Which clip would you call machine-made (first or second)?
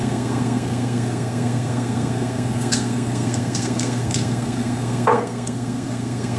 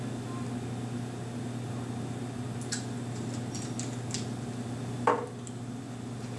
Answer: first